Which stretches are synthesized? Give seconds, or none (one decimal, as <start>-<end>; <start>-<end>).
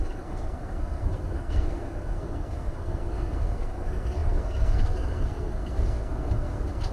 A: 0.0-6.9